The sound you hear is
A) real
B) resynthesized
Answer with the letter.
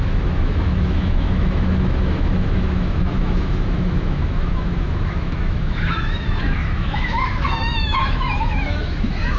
B